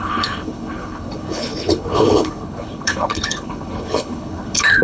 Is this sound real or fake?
fake